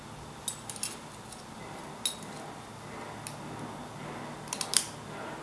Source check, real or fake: real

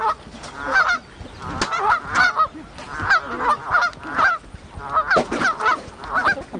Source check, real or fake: real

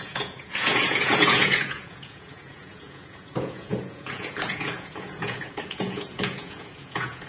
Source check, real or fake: fake